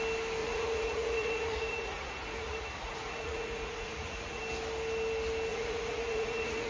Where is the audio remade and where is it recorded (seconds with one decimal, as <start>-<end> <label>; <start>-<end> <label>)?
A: 0.0-0.4 recorded; 0.4-4.4 remade; 4.4-5.5 recorded; 5.5-6.7 remade